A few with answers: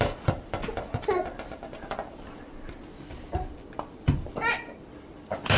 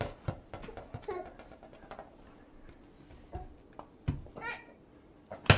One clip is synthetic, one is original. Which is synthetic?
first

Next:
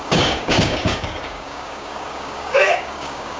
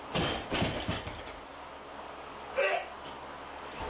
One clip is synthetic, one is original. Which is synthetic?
first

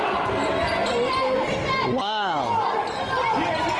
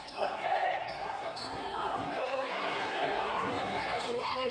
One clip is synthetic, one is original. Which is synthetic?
second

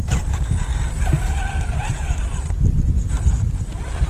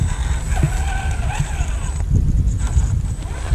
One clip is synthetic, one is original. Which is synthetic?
first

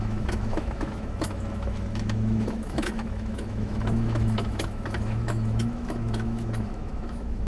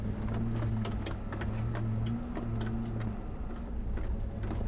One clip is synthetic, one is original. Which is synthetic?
first